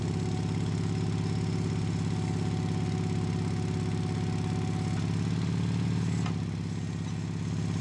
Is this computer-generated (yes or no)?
no